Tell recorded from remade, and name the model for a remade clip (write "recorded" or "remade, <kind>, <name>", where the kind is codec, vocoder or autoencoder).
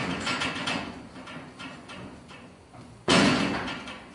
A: remade, vocoder, Vocos